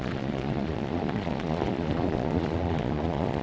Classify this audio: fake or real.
fake